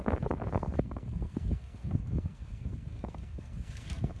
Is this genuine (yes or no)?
no